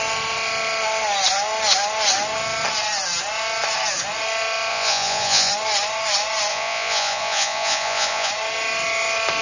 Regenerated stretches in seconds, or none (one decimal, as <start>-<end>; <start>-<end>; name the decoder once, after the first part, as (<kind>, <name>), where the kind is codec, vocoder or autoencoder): 4.7-5.5 (vocoder, Vocos); 6.5-8.3